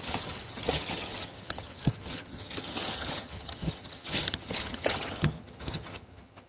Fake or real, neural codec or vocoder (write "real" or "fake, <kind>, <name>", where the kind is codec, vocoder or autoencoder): fake, vocoder, HiFi-GAN